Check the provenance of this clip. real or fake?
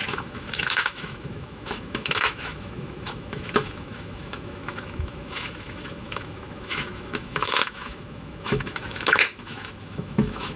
fake